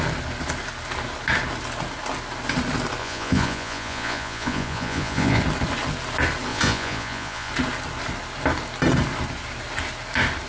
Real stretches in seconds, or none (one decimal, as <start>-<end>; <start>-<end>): 0.0-3.0; 5.4-6.5; 7.5-10.5